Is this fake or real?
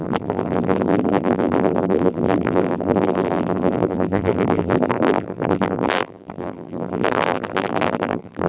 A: fake